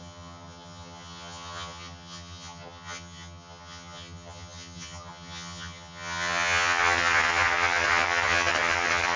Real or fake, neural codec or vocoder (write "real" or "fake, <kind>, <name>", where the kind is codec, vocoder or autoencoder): fake, vocoder, HiFi-GAN